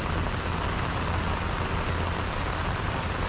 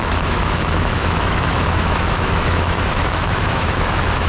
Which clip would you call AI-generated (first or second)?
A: second